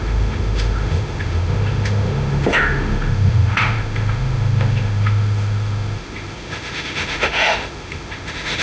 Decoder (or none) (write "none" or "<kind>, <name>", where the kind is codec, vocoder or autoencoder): autoencoder, DAC-VAE